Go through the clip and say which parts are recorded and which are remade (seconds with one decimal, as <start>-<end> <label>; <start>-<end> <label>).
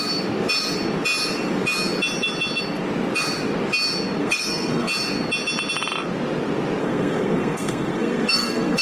0.0-4.2 recorded; 4.2-4.9 remade; 4.9-6.8 recorded; 6.8-8.8 remade